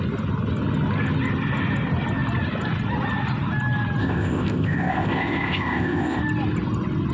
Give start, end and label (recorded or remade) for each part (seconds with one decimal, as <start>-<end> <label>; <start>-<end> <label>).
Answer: 0.0-4.0 recorded; 4.0-6.2 remade; 6.2-7.1 recorded